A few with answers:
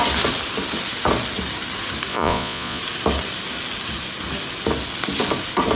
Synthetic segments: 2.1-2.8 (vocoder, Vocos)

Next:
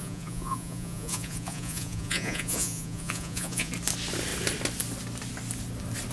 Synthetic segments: 0.0-3.7 (vocoder, Vocos)

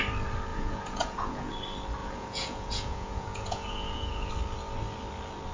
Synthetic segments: 0.5-1.5 (vocoder, Vocos); 2.0-4.3

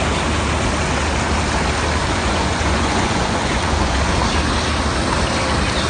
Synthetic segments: 2.0-4.2 (vocoder, Vocos)

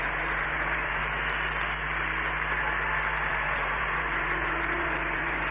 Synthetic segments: 0.0-1.0 (vocoder, Vocos); 3.3-5.5

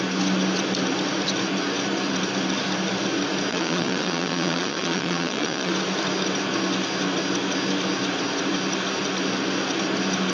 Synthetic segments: 3.5-5.7 (vocoder, Vocos)

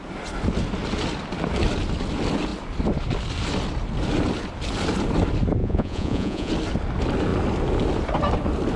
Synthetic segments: 5.6-6.5 (vocoder, Vocos)